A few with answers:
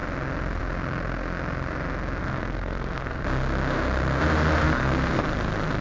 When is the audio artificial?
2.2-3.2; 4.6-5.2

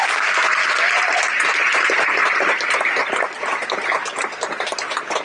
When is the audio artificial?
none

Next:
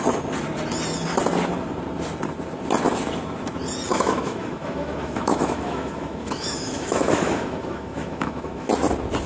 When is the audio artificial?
3.9-8.7

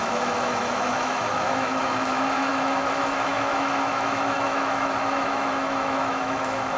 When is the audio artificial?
0.0-6.8

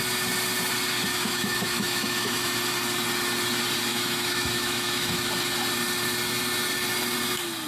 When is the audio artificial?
1.1-2.4; 3.9-5.3

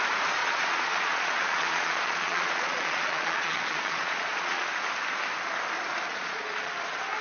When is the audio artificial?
0.4-4.7; 6.1-6.7

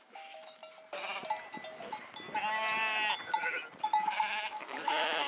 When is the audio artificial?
0.0-0.6; 3.8-5.3